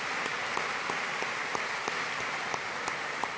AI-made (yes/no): no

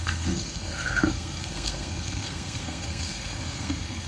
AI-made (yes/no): yes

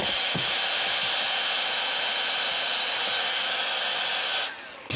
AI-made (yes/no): no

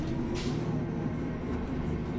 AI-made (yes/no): no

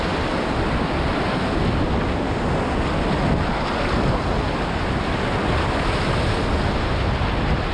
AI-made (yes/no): no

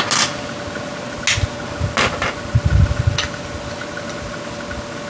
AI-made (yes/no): no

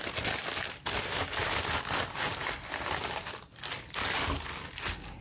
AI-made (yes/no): no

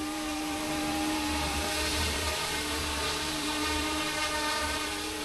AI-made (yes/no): yes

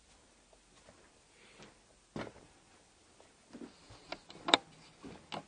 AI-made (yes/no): no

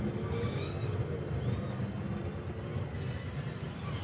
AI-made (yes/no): no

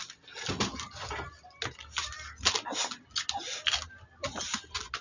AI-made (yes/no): no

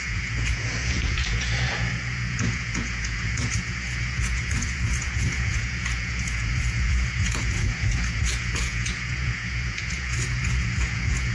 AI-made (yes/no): yes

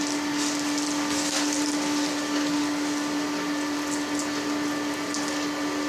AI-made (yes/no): no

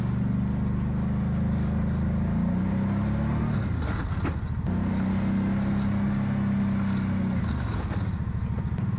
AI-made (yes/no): no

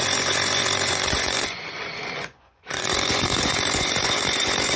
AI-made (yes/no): yes